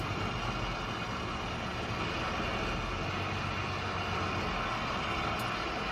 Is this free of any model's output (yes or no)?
yes